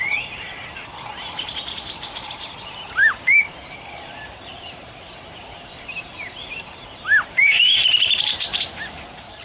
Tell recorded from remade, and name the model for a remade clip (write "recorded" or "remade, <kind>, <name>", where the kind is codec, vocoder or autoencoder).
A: remade, vocoder, BigVGAN v2